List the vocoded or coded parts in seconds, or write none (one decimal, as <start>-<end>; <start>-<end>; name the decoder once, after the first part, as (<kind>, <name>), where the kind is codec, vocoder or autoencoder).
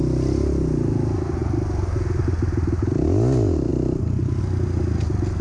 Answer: none